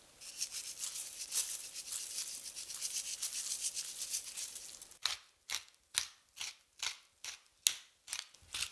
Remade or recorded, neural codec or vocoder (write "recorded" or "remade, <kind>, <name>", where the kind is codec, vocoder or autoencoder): recorded